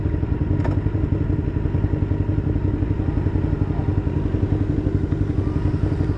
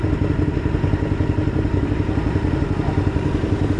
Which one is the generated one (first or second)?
second